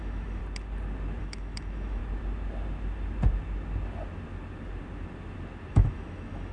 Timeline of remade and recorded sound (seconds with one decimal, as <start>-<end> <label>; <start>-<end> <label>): 0.0-0.4 remade; 0.4-1.2 recorded; 1.2-2.0 remade; 2.0-5.7 recorded; 5.7-6.5 remade